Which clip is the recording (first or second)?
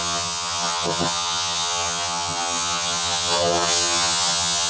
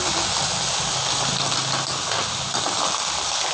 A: second